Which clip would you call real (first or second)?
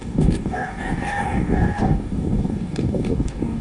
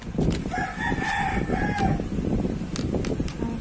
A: second